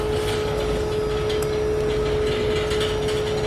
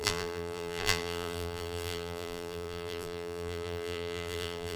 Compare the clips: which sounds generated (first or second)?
second